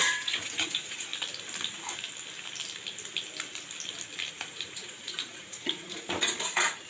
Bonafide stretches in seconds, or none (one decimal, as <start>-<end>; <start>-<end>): 1.1-4.3